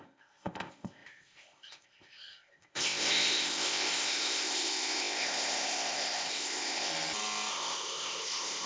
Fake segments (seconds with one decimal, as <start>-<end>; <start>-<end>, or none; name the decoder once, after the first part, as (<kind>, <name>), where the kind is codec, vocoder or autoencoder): 0.0-6.9 (codec, ZipCodec); 7.5-8.7